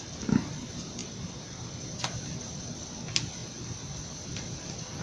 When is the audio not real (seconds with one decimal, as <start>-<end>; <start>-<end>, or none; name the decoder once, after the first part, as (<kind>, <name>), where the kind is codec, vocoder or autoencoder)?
0.0-3.4 (vocoder, BigVGAN v2); 4.0-5.0